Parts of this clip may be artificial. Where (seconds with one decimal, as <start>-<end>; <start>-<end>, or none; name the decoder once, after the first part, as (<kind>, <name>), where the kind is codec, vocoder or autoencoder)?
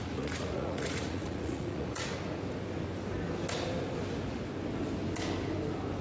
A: 0.0-2.1 (vocoder, Vocos)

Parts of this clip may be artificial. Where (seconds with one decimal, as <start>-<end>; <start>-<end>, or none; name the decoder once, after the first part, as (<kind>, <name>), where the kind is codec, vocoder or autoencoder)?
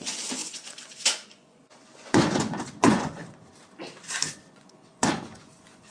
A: 0.0-3.2 (vocoder, Vocos); 4.3-5.9